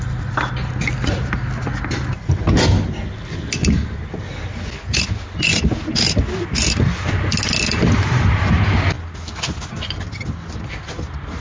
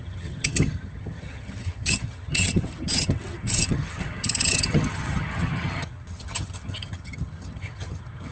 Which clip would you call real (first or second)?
first